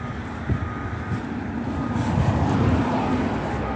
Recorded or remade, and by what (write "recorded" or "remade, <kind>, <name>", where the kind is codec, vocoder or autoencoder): recorded